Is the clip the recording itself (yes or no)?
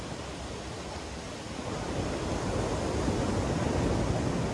yes